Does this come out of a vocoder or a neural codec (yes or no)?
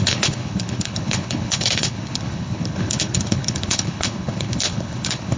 yes